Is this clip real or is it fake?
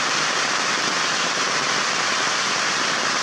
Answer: real